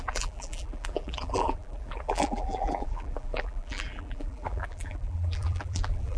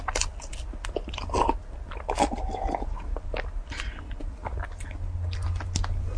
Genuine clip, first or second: second